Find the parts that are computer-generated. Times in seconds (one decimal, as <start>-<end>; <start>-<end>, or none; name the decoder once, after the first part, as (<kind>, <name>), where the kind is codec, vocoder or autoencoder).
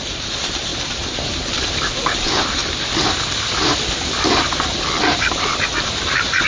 0.0-2.6 (vocoder, BigVGAN v2); 5.0-6.5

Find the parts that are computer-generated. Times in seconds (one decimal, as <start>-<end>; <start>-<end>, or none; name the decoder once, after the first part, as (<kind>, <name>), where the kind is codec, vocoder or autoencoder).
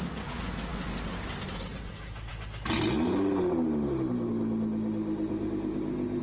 none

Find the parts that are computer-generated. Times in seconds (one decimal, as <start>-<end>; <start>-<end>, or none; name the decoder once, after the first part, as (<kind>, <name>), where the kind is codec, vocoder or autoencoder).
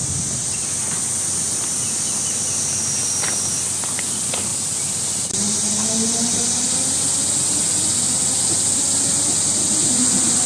0.0-0.6 (vocoder, BigVGAN v2); 4.5-5.9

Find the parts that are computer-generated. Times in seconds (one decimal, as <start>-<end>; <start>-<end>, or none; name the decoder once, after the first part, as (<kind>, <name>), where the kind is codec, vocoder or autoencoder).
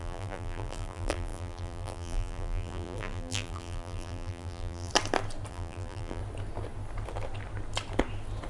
0.0-4.9 (vocoder, BigVGAN v2); 5.5-6.2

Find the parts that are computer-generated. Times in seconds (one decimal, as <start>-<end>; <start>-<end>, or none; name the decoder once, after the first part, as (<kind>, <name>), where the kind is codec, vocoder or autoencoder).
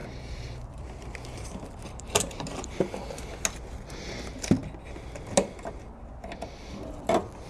0.0-2.7 (vocoder, BigVGAN v2)